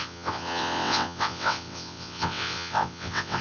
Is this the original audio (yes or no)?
no